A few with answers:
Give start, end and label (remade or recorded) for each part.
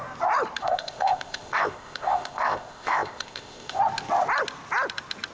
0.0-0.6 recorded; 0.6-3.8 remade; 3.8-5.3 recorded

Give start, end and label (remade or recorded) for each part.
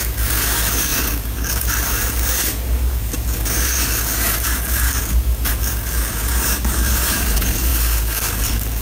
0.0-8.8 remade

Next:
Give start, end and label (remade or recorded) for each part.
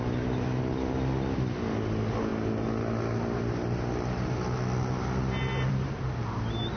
0.0-6.8 recorded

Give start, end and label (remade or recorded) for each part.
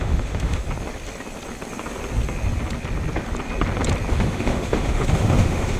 0.0-0.6 remade; 0.6-4.1 recorded; 4.1-5.8 remade